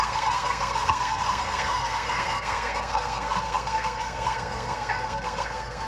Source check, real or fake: fake